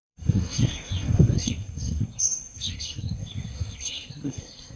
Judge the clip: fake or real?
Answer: fake